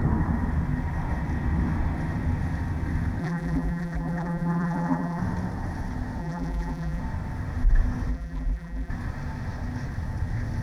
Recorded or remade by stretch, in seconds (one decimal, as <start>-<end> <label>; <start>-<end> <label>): 0.0-3.2 recorded; 3.2-5.2 remade; 5.2-6.2 recorded; 6.2-7.0 remade; 7.0-8.1 recorded; 8.1-8.9 remade; 8.9-10.6 recorded